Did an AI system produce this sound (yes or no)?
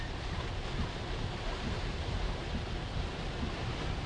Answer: yes